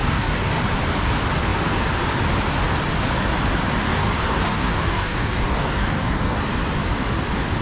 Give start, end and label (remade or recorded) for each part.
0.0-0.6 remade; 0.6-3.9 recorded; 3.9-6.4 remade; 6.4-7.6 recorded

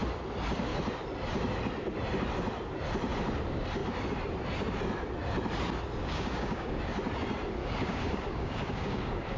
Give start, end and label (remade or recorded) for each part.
0.0-6.0 recorded; 6.0-6.8 remade; 6.8-7.6 recorded; 7.6-9.4 remade